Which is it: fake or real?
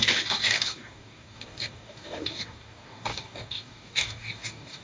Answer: fake